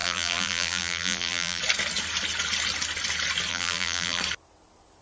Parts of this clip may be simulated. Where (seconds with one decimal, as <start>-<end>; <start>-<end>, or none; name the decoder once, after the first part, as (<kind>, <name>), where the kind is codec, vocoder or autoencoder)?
0.0-1.6 (vocoder, BigVGAN v2); 3.5-4.2